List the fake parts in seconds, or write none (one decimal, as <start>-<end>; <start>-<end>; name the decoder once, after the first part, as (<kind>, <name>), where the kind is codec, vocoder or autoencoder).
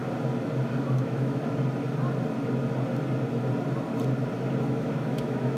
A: 0.8-1.4 (autoencoder, DAC-VAE); 4.6-5.6